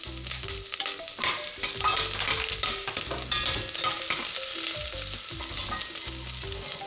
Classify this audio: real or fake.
real